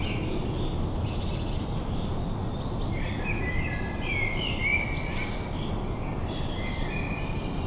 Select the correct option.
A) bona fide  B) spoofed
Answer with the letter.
A